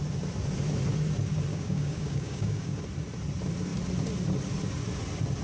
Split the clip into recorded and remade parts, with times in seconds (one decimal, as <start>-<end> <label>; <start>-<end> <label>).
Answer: 0.0-1.5 recorded; 1.5-2.8 remade; 2.8-5.4 recorded